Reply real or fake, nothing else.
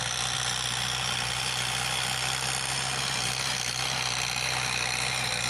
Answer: real